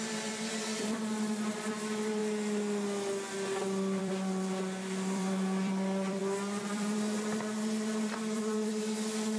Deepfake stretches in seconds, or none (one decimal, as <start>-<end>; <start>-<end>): 0.0-2.2; 4.0-6.2; 6.7-9.4